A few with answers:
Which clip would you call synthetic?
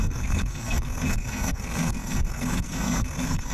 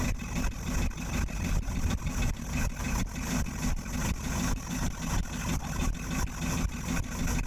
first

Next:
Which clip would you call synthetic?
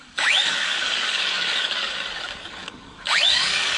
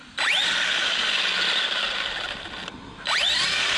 first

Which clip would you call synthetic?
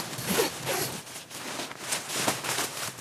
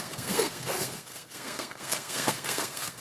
second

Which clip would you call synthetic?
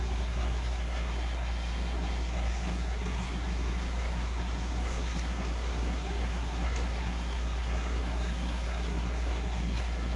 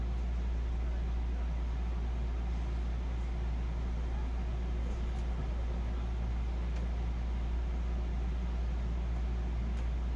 first